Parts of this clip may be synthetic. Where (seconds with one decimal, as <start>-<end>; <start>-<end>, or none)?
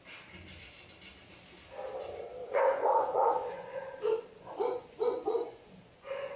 2.4-6.4